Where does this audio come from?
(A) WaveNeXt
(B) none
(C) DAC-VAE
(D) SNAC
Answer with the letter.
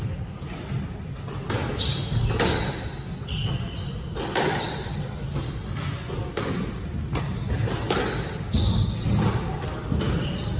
B